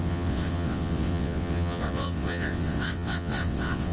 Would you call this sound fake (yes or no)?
yes